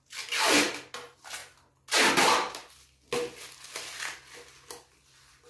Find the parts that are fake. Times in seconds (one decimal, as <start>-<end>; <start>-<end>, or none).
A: none